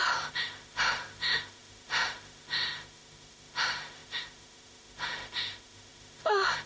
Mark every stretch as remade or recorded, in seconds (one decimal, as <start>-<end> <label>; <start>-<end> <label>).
0.0-6.7 remade